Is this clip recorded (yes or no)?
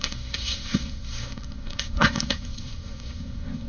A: no